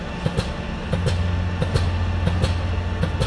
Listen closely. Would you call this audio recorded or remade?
recorded